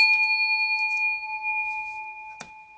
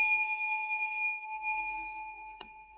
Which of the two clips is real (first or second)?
first